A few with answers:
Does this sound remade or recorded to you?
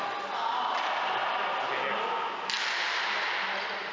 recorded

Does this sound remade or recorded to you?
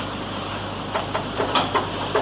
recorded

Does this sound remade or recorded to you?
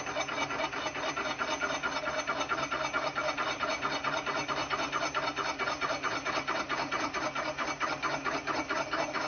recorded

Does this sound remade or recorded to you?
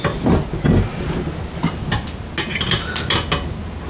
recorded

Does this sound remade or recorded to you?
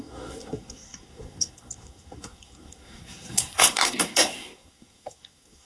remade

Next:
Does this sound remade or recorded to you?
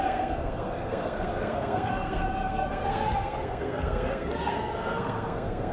remade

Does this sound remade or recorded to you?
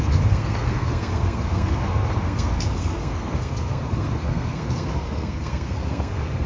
remade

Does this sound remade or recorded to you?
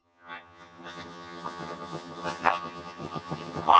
remade